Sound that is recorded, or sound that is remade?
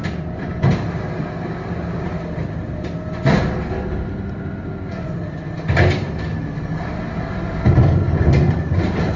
recorded